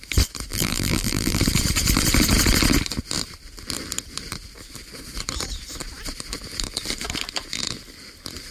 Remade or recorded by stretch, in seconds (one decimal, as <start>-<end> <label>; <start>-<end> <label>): 0.0-0.5 recorded; 0.5-1.4 remade; 1.4-8.5 recorded